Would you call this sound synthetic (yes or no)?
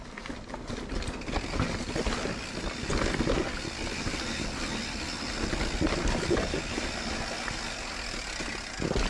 no